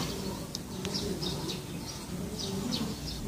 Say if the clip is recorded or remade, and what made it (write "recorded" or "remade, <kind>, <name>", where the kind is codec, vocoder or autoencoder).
recorded